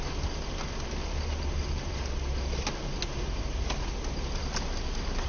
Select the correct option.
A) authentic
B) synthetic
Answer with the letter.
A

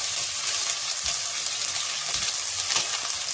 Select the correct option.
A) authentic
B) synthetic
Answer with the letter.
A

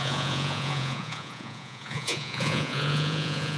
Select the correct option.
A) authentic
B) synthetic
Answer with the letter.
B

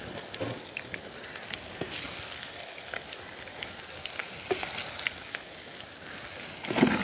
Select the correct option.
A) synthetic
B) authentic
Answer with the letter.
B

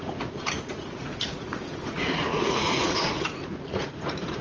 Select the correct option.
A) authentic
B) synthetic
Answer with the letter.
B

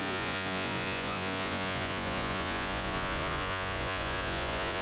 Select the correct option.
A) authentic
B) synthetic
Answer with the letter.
B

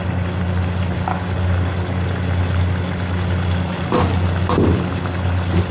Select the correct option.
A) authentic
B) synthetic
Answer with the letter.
A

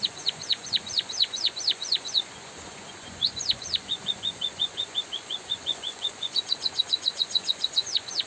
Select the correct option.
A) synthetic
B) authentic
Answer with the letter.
A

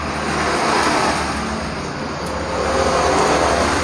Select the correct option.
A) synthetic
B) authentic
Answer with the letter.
B